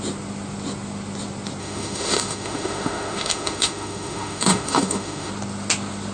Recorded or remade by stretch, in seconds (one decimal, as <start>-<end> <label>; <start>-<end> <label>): 0.0-1.6 recorded; 1.6-5.3 remade; 5.3-6.1 recorded